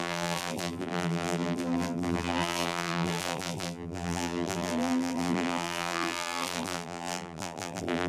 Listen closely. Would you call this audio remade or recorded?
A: remade